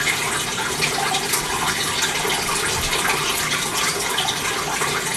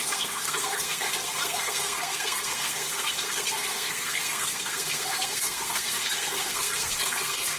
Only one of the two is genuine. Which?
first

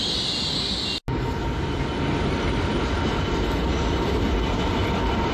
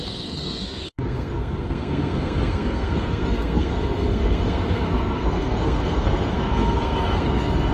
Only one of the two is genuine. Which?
first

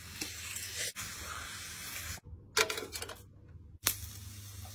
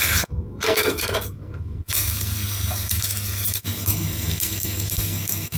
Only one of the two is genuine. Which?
first